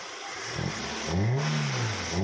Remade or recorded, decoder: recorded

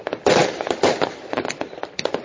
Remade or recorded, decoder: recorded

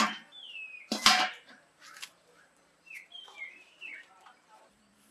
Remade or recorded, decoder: remade, vocoder, BigVGAN v2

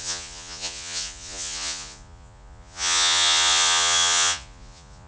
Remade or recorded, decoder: remade, vocoder, Vocos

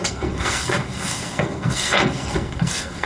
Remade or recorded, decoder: remade, codec, SNAC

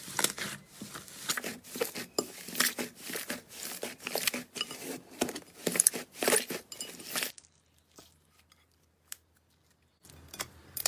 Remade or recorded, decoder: recorded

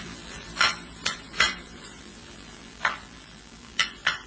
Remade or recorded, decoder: remade, vocoder, BigVGAN v2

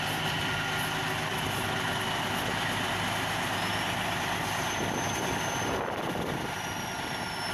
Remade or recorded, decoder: recorded